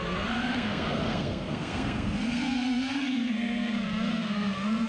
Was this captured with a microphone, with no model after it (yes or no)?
no